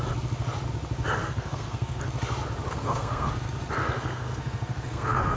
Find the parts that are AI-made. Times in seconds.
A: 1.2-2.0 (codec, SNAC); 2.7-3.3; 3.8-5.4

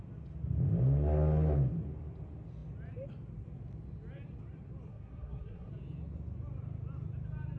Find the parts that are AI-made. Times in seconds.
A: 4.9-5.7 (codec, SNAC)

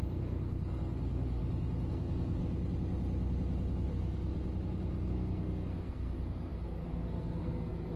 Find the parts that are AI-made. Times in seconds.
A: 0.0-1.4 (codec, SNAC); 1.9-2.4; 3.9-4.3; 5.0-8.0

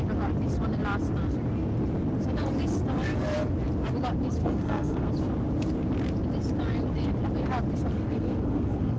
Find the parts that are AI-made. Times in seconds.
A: 4.4-5.1 (codec, SNAC); 7.9-9.0

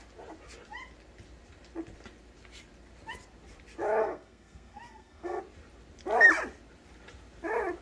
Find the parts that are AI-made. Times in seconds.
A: 4.0-5.4 (codec, SNAC)